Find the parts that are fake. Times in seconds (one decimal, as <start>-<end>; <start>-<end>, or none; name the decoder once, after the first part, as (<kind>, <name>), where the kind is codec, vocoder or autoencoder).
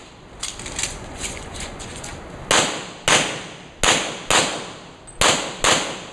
0.9-2.1 (vocoder, Vocos)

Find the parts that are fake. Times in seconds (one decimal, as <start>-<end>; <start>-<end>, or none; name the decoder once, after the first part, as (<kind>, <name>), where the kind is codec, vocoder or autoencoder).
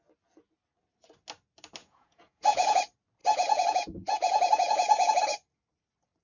1.8-2.8 (vocoder, Vocos); 3.2-5.2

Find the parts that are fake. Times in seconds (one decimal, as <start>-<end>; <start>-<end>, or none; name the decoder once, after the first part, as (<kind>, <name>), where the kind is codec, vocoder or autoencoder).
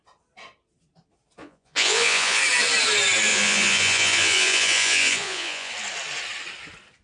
1.4-2.4 (vocoder, Vocos); 3.3-5.7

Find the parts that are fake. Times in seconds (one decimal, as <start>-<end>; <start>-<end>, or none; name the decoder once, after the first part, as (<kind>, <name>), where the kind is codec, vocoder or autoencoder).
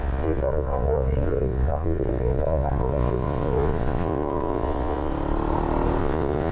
0.0-5.1 (vocoder, Vocos); 6.0-6.5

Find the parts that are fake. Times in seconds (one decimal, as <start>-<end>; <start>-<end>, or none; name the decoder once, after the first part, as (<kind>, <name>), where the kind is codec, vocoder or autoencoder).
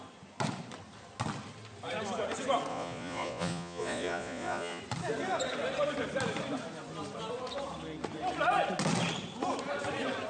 2.7-4.8 (vocoder, Vocos)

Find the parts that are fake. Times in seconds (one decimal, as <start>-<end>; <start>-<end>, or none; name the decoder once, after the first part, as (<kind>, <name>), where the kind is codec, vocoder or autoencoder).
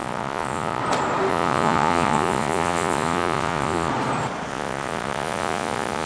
0.0-0.8 (vocoder, Vocos); 1.3-3.9; 4.5-6.1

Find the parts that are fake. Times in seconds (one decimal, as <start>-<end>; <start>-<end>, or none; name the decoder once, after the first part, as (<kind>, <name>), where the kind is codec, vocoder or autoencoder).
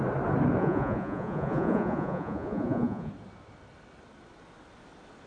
0.6-3.1 (vocoder, Vocos)